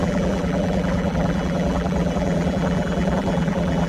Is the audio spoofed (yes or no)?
yes